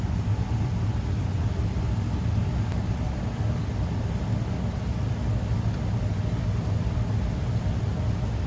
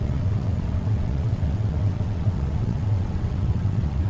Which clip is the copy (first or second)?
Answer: second